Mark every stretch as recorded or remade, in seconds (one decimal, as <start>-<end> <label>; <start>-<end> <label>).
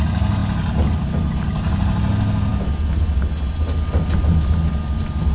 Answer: 0.0-5.3 recorded